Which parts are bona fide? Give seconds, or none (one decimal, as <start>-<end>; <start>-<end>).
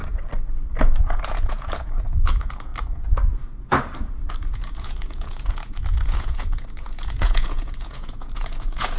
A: 0.0-1.0; 2.7-4.3